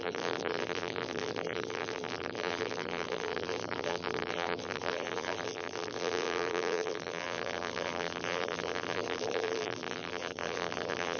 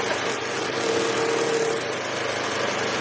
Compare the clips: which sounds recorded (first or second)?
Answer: second